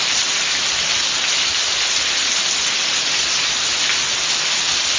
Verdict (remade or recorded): recorded